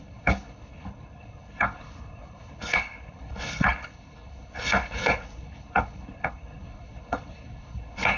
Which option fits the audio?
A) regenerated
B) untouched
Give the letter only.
A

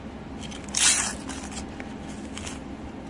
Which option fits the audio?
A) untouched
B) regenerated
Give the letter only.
A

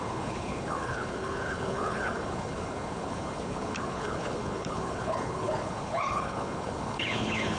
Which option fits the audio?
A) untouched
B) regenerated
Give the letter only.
B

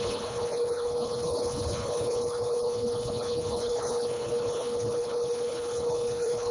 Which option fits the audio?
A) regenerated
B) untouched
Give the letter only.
A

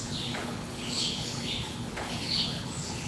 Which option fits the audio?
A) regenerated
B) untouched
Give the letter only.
A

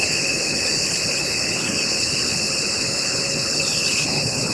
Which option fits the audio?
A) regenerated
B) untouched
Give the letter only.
A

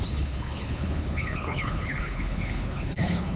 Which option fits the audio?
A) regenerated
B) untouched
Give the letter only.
A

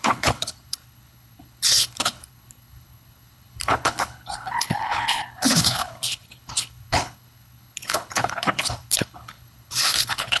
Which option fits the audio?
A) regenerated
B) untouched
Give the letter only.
A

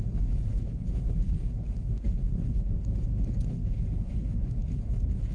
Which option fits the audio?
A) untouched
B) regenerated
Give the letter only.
B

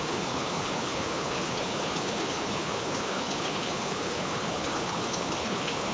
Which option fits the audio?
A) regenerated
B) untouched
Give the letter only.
A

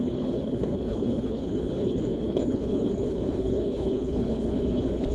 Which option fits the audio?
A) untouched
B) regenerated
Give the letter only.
B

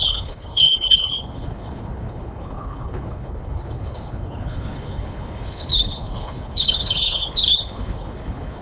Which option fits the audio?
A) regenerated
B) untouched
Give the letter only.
A